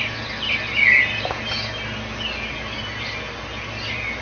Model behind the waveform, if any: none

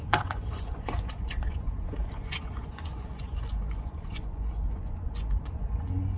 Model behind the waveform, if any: vocoder, Vocos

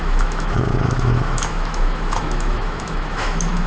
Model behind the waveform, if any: autoencoder, DAC-VAE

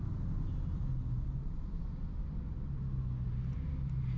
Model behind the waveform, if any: none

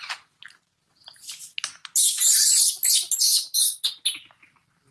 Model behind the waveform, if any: none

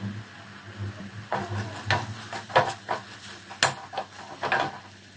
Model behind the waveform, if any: none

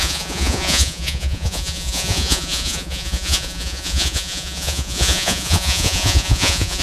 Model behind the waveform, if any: vocoder, Vocos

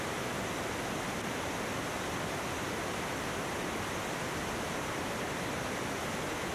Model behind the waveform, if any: none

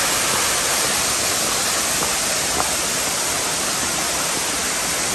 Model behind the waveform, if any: none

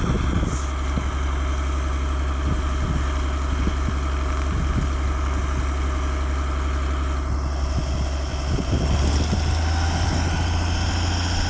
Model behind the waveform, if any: none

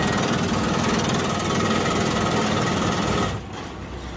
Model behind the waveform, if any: none